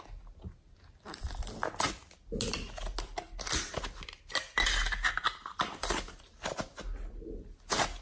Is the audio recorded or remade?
recorded